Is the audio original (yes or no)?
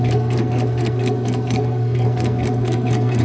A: no